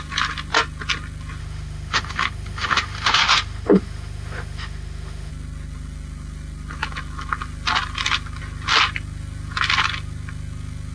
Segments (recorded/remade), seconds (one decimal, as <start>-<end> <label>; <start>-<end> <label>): 0.0-1.4 recorded; 1.4-5.3 remade; 5.3-10.9 recorded